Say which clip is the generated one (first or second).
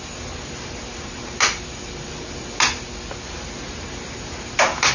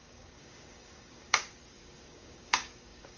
second